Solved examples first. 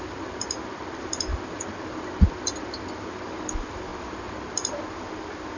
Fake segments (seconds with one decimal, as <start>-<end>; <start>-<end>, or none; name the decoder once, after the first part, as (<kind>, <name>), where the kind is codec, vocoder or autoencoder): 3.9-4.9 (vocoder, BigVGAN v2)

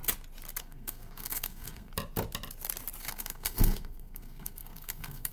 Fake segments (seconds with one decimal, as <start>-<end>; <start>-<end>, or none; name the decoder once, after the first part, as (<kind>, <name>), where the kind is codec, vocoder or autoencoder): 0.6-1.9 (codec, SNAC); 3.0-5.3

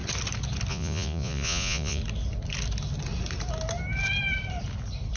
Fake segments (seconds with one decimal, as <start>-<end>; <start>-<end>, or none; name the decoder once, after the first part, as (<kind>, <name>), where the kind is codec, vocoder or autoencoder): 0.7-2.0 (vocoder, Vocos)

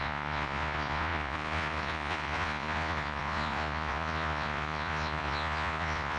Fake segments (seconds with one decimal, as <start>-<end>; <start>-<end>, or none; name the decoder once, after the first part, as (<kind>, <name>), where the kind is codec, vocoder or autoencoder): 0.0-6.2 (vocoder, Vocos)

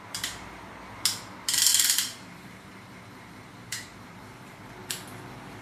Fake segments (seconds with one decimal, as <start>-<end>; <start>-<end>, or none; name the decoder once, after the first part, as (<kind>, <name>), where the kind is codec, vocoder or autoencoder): 1.7-4.6 (vocoder, BigVGAN v2)

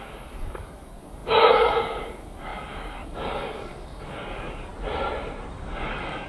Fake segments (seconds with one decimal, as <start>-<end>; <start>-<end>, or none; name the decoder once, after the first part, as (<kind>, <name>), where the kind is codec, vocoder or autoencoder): 0.0-4.7 (codec, DAC); 5.5-6.3

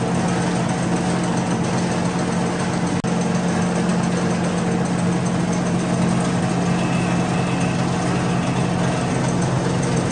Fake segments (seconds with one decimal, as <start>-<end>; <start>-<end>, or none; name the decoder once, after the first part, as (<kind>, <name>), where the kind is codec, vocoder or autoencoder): none